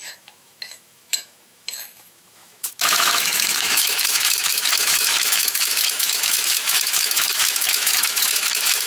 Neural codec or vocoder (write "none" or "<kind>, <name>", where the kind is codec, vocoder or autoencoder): autoencoder, DAC-VAE